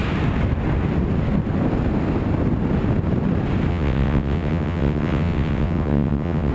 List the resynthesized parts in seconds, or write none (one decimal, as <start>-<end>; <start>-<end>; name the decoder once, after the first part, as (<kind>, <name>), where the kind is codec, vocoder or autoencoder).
3.7-6.5 (vocoder, WaveNeXt)